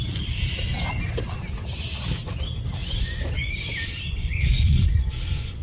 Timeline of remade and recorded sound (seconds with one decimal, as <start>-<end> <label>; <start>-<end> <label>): 0.0-2.8 recorded; 2.8-3.5 remade; 3.5-4.2 recorded; 4.2-5.6 remade